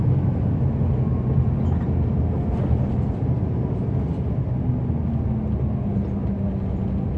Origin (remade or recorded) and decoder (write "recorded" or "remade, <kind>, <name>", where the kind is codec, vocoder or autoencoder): recorded